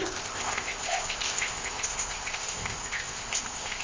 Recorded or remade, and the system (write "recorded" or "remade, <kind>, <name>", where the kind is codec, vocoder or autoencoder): remade, codec, ZipCodec